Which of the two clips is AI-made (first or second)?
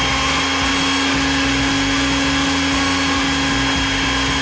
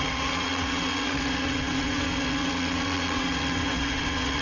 second